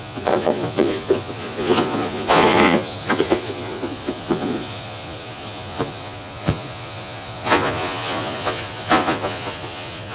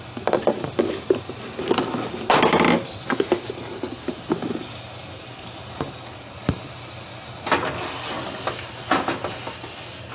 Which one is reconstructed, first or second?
first